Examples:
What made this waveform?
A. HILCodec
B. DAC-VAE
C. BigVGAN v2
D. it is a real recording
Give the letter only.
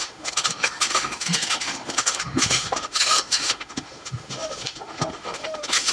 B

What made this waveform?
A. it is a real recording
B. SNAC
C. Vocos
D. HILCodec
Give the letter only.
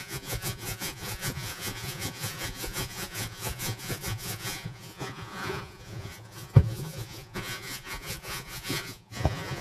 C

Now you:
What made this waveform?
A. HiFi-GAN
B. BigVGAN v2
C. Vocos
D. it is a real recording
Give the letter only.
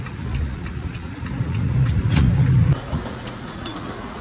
C